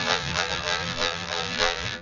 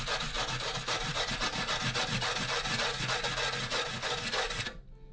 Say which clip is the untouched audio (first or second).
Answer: second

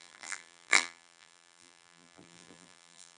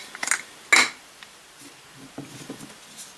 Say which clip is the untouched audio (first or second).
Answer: second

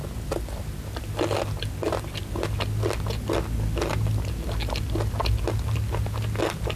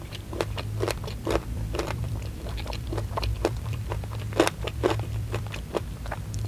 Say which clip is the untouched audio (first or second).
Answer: first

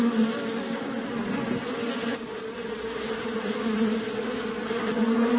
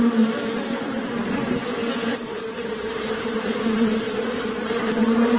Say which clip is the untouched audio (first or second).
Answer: first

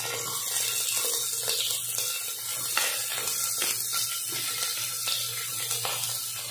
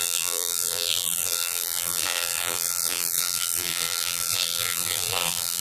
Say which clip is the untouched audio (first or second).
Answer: first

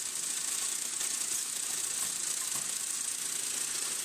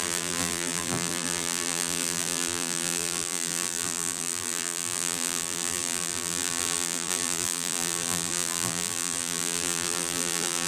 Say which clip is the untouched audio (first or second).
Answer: first